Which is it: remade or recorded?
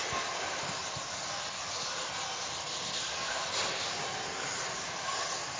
recorded